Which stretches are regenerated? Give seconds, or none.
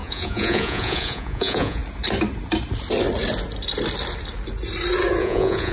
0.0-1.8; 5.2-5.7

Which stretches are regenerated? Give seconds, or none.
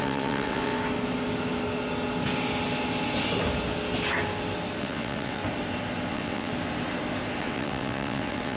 0.0-0.7; 4.8-5.4; 6.1-6.5; 7.4-8.6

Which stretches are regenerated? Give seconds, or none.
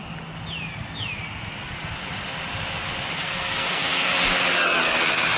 3.2-4.1